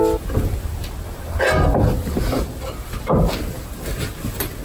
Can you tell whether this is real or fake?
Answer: real